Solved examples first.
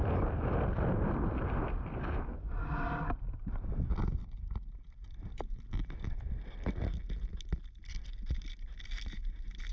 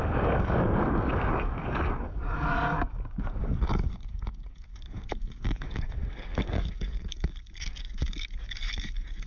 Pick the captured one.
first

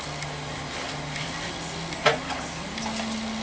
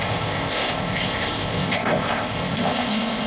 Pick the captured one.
first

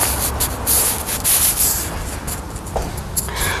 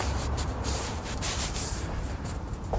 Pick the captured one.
first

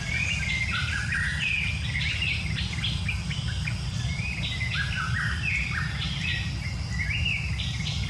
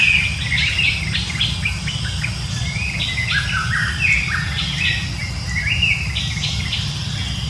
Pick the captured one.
second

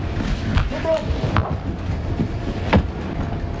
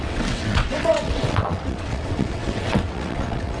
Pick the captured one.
first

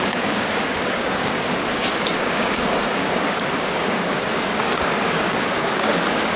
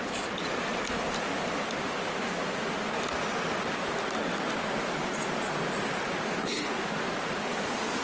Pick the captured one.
second